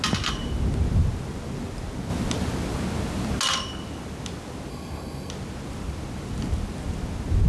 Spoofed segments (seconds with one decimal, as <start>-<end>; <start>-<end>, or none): 4.7-5.3